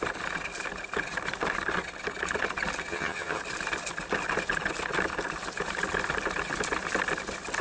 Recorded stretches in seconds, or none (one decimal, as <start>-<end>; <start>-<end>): 0.0-2.9; 3.4-7.6